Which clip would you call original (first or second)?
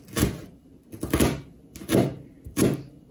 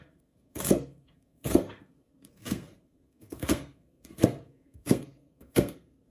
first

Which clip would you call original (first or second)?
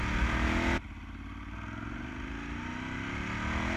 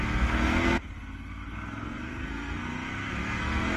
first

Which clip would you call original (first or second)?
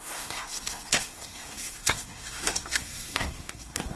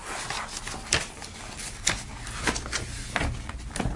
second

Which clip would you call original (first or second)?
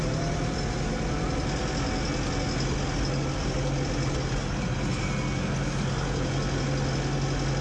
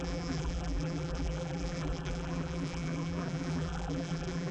first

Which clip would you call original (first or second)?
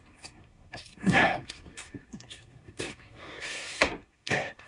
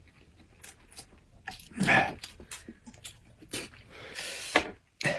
second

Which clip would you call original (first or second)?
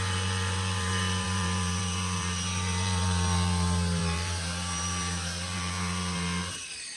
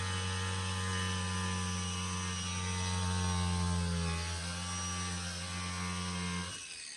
second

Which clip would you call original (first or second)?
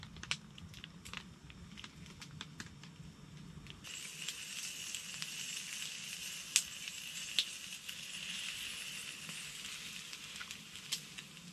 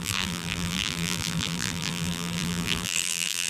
first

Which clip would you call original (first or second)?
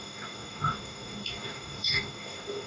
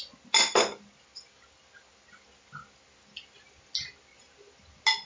second